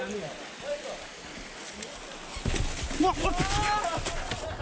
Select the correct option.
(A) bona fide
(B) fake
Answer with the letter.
A